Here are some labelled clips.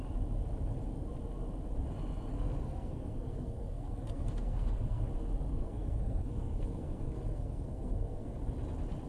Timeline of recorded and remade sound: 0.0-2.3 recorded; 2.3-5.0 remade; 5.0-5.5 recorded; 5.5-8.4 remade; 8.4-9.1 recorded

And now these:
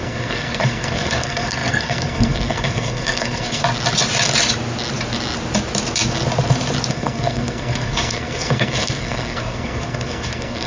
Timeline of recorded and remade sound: 0.0-3.6 remade; 3.6-6.9 recorded; 6.9-10.7 remade